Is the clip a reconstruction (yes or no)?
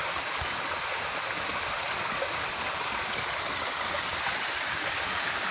no